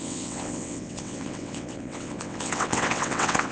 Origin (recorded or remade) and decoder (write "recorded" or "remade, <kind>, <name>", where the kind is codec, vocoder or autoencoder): remade, vocoder, WaveNeXt